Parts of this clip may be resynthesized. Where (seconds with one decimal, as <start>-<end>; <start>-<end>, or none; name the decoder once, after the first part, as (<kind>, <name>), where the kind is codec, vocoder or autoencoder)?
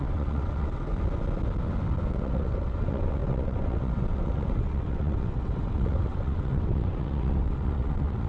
0.0-0.9 (vocoder, WaveNeXt); 2.1-8.3